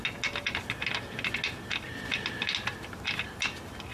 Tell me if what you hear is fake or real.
real